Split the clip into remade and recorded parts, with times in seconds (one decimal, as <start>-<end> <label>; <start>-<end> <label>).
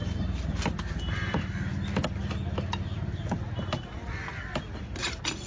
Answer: 0.0-5.5 recorded